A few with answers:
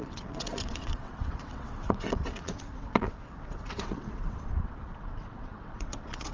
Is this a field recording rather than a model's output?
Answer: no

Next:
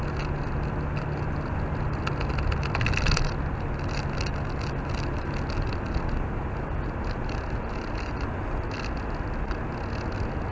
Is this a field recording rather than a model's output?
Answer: yes